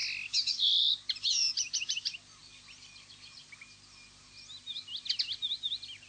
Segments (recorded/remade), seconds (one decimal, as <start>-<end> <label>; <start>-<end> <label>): 0.0-0.5 recorded; 0.5-6.1 remade